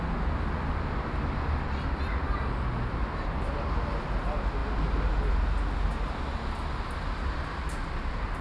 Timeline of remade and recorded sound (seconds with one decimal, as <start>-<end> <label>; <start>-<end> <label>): 0.0-8.4 recorded